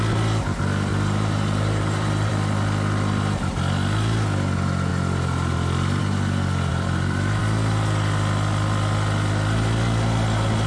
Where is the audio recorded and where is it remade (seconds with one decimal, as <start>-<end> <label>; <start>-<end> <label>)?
0.0-0.9 recorded; 0.9-2.3 remade; 2.3-6.7 recorded; 6.7-7.4 remade; 7.4-10.7 recorded